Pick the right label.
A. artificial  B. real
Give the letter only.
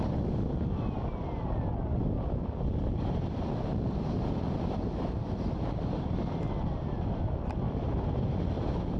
B